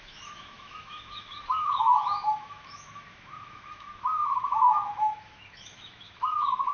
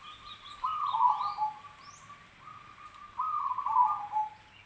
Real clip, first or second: second